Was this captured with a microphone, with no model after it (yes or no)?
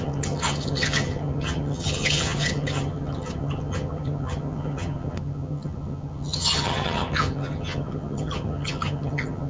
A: no